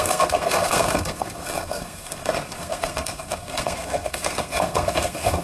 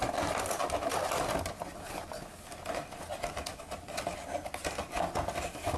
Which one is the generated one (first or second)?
first